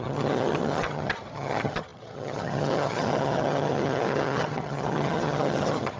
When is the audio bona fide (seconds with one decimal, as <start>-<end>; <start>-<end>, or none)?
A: none